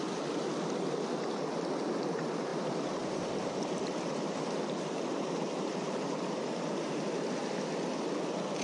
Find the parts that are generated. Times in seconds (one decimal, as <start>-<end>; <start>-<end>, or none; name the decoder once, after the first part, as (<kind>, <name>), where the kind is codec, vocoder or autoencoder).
2.5-6.4 (vocoder, BigVGAN v2)